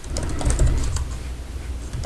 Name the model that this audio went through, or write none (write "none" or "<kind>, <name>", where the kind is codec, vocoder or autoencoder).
none